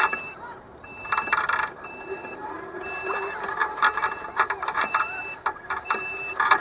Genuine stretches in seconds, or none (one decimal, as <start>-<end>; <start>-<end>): none